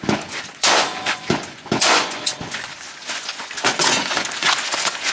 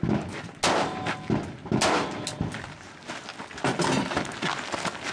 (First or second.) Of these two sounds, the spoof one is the first